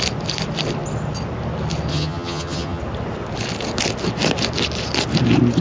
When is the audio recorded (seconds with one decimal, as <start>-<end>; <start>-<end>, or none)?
0.0-1.9; 2.8-5.6